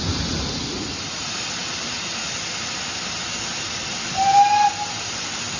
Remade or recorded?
recorded